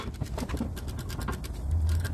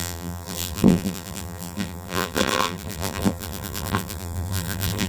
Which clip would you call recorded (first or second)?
first